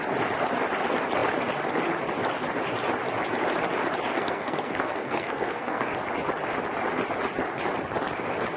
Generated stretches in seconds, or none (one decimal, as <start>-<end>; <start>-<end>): 4.1-5.9